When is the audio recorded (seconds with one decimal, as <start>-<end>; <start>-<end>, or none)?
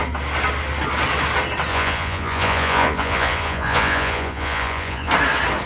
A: 0.0-1.7; 5.1-5.7